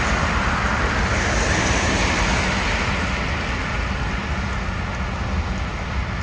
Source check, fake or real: real